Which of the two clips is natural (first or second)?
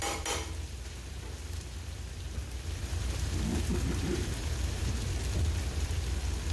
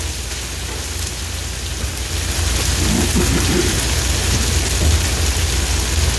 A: second